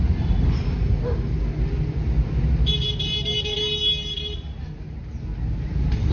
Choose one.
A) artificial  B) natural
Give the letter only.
B